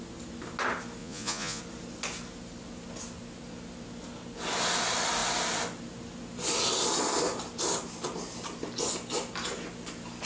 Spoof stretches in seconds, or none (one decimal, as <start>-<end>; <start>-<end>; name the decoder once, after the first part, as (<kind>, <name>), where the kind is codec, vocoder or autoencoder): 1.0-1.6 (vocoder, Vocos)